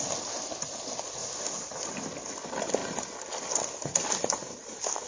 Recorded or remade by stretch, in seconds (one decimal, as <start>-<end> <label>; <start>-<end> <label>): 0.0-5.1 recorded